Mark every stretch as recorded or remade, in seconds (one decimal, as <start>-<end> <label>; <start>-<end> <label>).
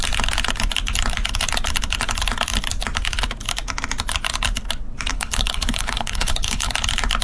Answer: 0.0-5.1 recorded; 5.1-6.7 remade; 6.7-7.2 recorded